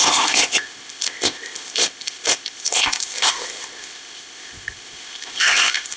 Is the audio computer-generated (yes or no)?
yes